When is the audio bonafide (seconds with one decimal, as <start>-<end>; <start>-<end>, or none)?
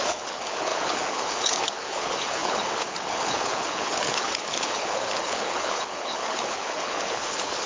none